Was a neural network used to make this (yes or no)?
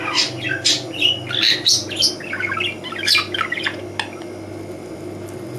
no